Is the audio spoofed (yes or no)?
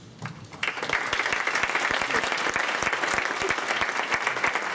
no